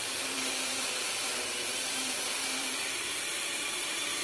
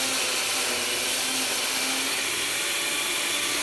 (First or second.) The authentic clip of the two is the second